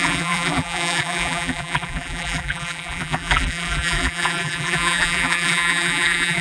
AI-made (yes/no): yes